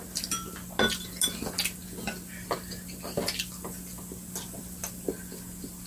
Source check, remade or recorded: recorded